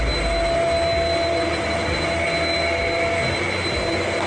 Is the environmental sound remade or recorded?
recorded